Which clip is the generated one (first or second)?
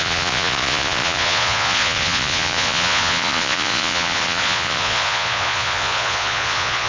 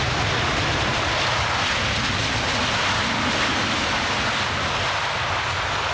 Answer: first